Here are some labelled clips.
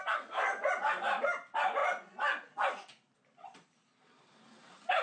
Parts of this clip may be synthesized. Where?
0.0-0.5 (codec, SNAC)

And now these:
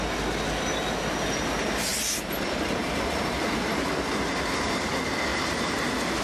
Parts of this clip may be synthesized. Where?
1.9-3.9 (vocoder, BigVGAN v2); 5.3-5.8

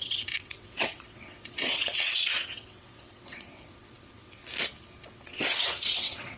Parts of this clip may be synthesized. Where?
0.0-4.4 (vocoder, WaveNeXt); 5.1-6.4

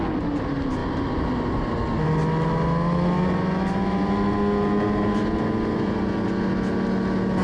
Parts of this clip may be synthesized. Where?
none